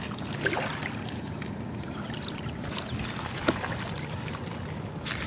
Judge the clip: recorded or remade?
recorded